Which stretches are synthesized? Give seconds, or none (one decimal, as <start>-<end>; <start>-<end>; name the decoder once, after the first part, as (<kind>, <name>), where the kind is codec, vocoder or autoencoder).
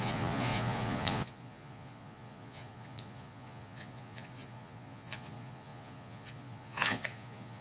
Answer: 0.0-7.6 (vocoder, Vocos)